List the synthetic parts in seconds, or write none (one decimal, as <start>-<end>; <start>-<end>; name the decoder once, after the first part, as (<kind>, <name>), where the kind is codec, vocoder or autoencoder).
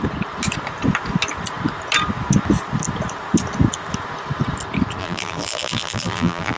5.0-6.6 (vocoder, BigVGAN v2)